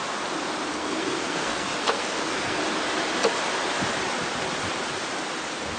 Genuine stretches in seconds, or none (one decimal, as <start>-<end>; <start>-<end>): 0.0-0.7; 2.6-5.8